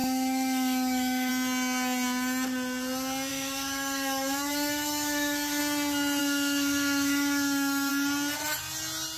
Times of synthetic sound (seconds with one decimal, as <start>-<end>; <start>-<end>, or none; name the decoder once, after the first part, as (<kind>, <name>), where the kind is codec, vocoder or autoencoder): 0.0-1.3 (autoencoder, DAC-VAE); 3.3-5.6; 6.2-7.9